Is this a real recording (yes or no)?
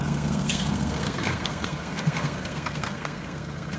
no